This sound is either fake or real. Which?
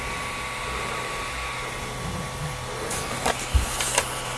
real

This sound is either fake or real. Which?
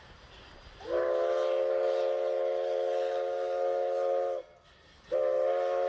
real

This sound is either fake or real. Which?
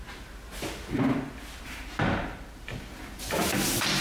real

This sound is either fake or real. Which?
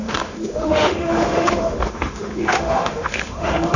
fake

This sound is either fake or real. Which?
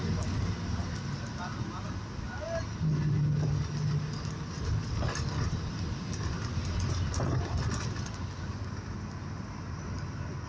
real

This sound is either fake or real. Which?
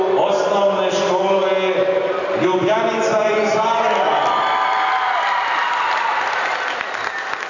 real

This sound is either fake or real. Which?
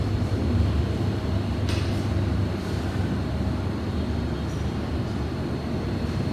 real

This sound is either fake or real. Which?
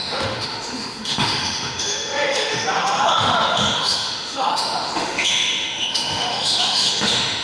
fake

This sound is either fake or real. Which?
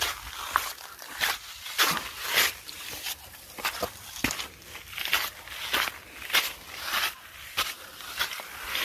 real